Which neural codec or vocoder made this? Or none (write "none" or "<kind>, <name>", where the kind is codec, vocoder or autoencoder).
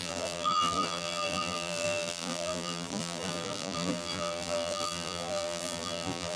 vocoder, BigVGAN v2